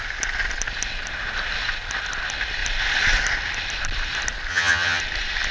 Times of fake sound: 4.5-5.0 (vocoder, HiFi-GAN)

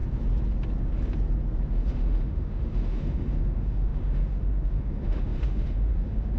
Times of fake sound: 1.7-6.4 (autoencoder, DAC-VAE)

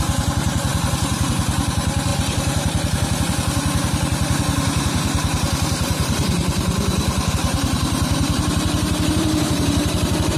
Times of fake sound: 0.0-10.4 (vocoder, BigVGAN v2)

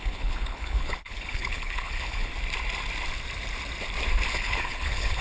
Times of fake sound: 0.0-2.3 (codec, HILCodec); 4.3-5.2